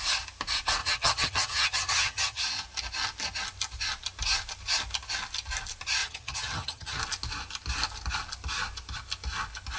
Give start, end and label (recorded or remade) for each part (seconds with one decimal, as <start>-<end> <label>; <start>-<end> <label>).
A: 0.0-0.8 recorded; 0.8-2.4 remade; 2.4-6.0 recorded; 6.0-7.0 remade; 7.0-9.8 recorded